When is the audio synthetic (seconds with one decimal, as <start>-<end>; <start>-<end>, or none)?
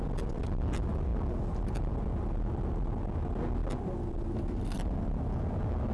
none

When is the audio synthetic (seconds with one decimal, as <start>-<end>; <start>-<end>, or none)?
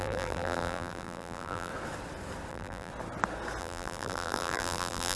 0.0-1.7; 2.5-2.9; 3.6-5.2